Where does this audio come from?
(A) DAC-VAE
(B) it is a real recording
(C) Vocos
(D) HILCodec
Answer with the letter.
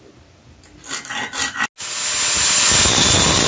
B